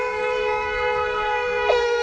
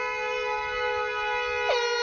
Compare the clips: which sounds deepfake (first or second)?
first